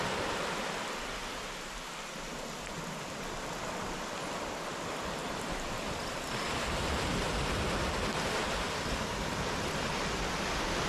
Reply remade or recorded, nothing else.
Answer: recorded